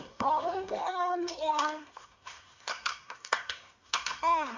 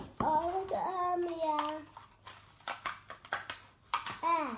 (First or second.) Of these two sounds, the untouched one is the second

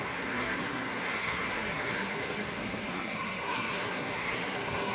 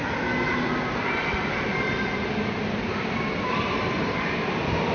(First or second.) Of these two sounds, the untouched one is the second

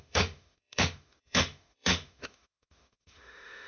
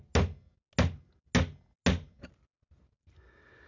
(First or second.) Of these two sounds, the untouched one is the second